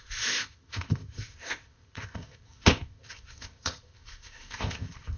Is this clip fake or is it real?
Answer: fake